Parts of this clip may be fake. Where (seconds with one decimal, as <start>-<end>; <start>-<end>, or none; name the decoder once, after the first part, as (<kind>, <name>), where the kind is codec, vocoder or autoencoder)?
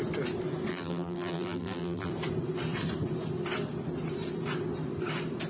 0.7-2.1 (vocoder, BigVGAN v2)